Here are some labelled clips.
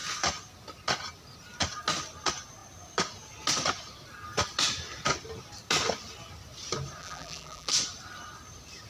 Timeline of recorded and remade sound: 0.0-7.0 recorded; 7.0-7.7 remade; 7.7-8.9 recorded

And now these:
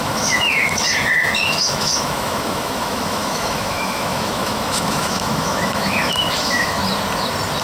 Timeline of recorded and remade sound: 0.0-6.8 remade; 6.8-7.6 recorded

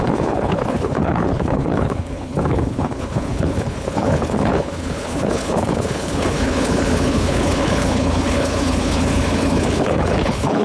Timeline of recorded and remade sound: 0.0-10.6 remade

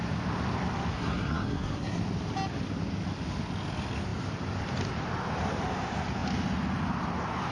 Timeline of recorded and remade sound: 0.0-0.9 recorded; 0.9-2.0 remade; 2.0-7.5 recorded

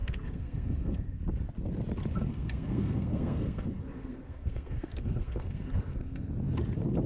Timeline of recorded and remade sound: 0.0-1.2 remade; 1.2-2.3 recorded; 2.3-6.3 remade; 6.3-7.1 recorded

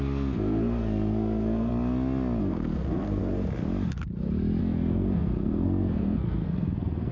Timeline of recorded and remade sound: 0.0-1.7 remade; 1.7-2.4 recorded; 2.4-3.2 remade; 3.2-4.6 recorded; 4.6-7.1 remade

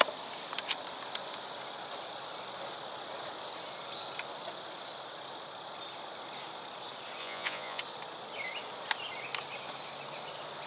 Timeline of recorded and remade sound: 0.0-7.2 recorded; 7.2-7.8 remade; 7.8-10.7 recorded

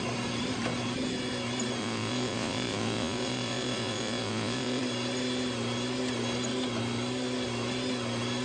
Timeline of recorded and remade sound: 0.0-1.8 recorded; 1.8-4.8 remade; 4.8-8.4 recorded